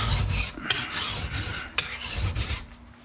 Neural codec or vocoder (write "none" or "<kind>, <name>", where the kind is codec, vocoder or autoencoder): none